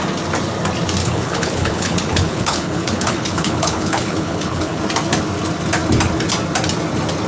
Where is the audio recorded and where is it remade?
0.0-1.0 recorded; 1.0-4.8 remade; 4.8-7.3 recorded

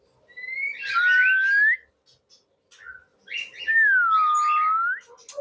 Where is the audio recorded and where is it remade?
0.0-5.4 recorded

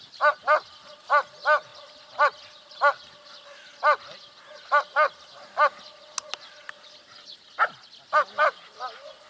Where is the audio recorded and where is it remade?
0.0-9.3 recorded

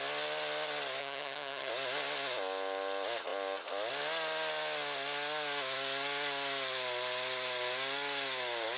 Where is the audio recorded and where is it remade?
0.0-1.0 recorded; 1.0-1.7 remade; 1.7-8.8 recorded

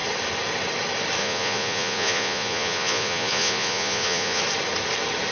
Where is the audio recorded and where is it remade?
0.0-1.2 recorded; 1.2-4.4 remade; 4.4-5.3 recorded

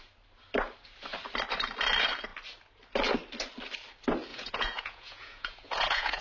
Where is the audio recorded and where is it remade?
0.0-4.3 recorded; 4.3-6.2 remade

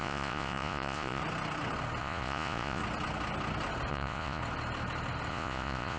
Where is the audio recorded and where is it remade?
0.0-1.2 remade; 1.2-2.0 recorded; 2.0-2.8 remade; 2.8-3.9 recorded; 3.9-4.4 remade; 4.4-5.3 recorded; 5.3-6.0 remade